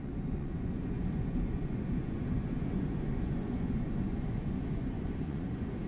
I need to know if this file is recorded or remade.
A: remade